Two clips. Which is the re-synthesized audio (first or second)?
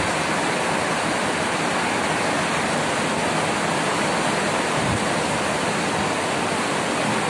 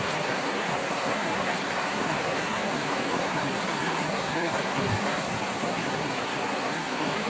second